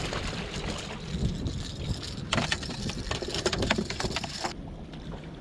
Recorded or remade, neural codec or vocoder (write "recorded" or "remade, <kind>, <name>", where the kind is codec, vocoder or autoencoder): recorded